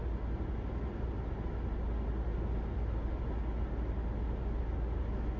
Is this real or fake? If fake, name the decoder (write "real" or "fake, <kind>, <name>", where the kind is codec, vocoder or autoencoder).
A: real